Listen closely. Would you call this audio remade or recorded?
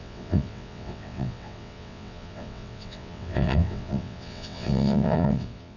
remade